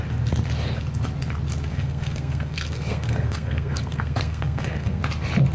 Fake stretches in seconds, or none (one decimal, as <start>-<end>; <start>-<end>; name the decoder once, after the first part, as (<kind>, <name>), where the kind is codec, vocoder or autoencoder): 1.7-5.0 (codec, SNAC)